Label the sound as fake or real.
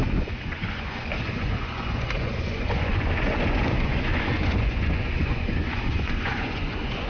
fake